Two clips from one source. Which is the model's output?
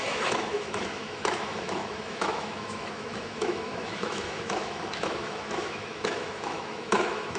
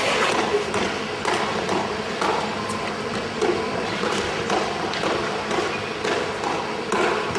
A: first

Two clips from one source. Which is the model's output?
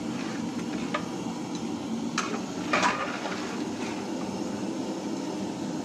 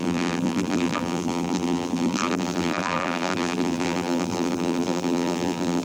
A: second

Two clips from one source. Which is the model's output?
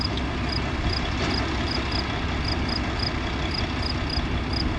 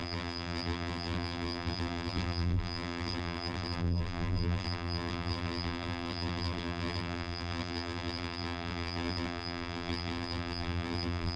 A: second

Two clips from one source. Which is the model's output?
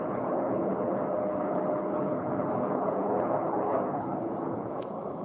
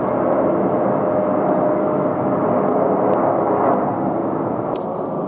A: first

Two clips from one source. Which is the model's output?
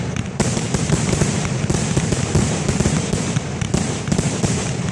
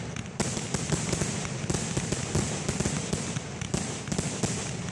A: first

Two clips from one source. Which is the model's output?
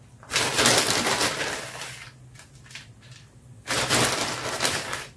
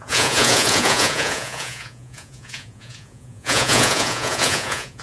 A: second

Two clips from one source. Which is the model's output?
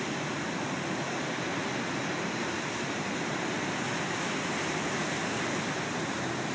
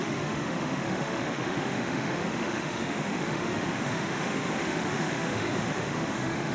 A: second